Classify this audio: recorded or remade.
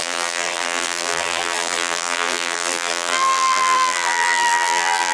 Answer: remade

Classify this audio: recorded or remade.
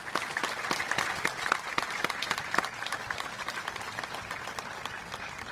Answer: recorded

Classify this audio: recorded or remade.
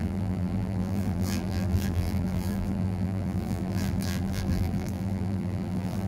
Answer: remade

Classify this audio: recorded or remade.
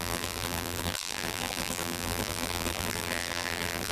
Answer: remade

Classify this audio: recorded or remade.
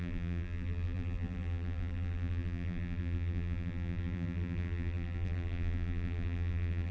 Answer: remade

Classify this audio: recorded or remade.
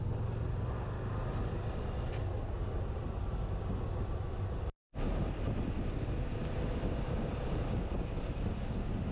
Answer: recorded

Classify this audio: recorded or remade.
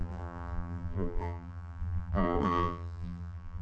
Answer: remade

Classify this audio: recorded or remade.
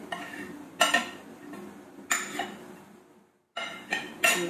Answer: recorded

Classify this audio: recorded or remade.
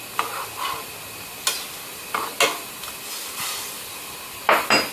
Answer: recorded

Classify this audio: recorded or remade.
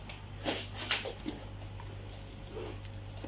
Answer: recorded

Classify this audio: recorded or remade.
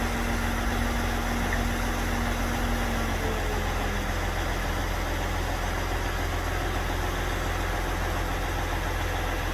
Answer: recorded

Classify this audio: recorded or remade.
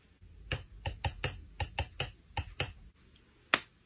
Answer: recorded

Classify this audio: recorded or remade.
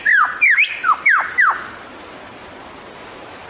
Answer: recorded